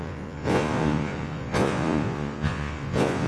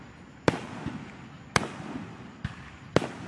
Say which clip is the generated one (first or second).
first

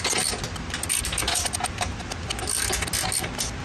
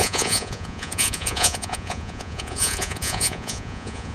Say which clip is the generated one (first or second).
second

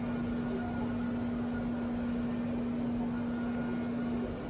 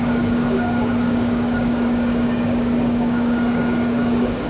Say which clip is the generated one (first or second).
second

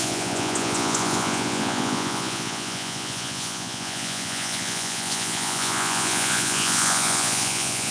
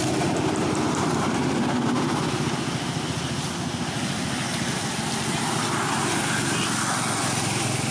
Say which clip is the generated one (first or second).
first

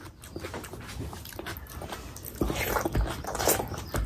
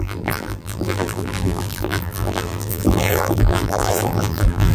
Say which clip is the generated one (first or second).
second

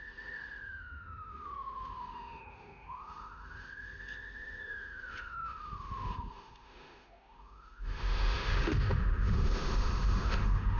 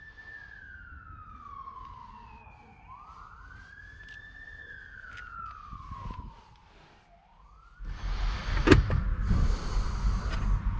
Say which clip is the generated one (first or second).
first